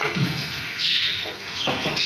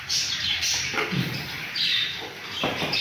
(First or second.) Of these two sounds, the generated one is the first